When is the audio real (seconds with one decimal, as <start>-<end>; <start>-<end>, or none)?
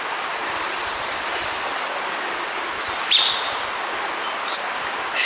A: 0.0-0.4; 1.9-2.8; 3.6-5.3